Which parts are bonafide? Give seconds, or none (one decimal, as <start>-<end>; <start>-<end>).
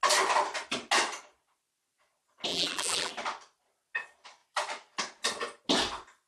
0.0-2.5; 3.1-6.3